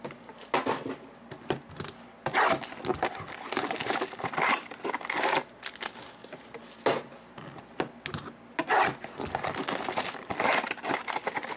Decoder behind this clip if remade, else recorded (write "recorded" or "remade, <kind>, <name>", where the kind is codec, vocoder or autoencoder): recorded